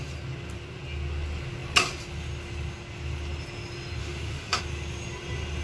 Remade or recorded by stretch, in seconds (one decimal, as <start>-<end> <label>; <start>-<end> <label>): 0.0-4.0 recorded; 4.0-4.6 remade; 4.6-5.6 recorded

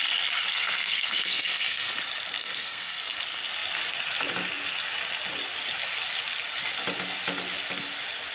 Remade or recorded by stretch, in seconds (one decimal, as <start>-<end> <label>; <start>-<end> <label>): 0.0-0.5 recorded; 0.5-1.9 remade; 1.9-2.4 recorded; 2.4-3.0 remade; 3.0-8.3 recorded

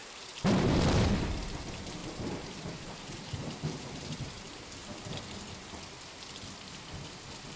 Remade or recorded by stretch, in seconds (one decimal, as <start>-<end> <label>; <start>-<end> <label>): 0.0-1.1 remade; 1.1-2.0 recorded; 2.0-5.2 remade; 5.2-7.6 recorded